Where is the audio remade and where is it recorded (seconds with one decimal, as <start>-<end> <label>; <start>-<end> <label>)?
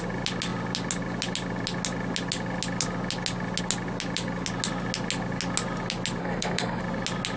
0.0-6.2 recorded; 6.2-6.8 remade; 6.8-7.4 recorded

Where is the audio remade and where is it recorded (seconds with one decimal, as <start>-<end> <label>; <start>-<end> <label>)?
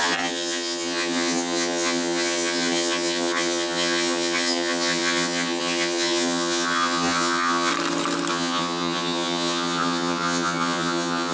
0.0-7.7 remade; 7.7-8.3 recorded; 8.3-11.3 remade